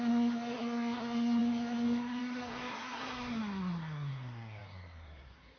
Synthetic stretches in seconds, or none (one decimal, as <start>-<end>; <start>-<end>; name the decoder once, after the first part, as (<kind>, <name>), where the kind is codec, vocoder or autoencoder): 0.0-5.6 (codec, SNAC)